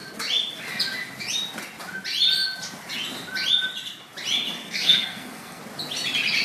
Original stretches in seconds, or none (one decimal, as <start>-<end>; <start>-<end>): 0.0-4.6; 5.6-6.4